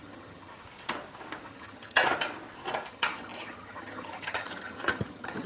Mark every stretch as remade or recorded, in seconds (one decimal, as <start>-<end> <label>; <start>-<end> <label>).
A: 0.0-0.5 remade; 0.5-1.5 recorded; 1.5-2.0 remade; 2.0-2.9 recorded; 2.9-5.5 remade